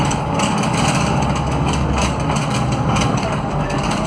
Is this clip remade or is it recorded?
remade